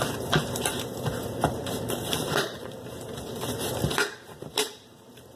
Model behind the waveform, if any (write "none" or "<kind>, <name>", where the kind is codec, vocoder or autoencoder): vocoder, BigVGAN v2